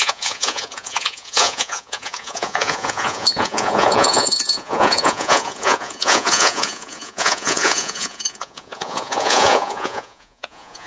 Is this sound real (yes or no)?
no